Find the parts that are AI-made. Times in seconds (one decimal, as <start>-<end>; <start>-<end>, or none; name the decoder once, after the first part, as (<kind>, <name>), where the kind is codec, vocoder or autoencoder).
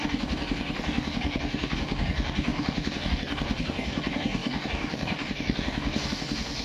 0.0-6.6 (codec, DAC)